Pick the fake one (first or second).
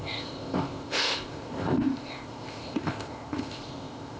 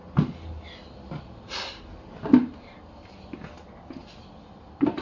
first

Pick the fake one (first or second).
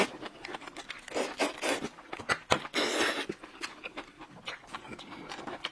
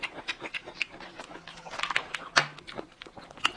first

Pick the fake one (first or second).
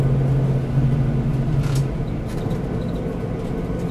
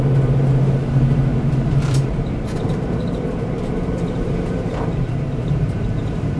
second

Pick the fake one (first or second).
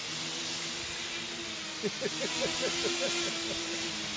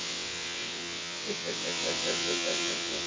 second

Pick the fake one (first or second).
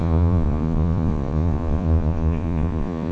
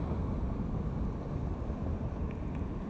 first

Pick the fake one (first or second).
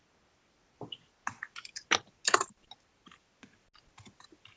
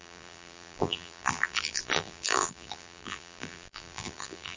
second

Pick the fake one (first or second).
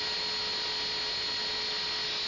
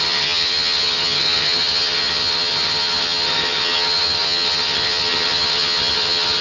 second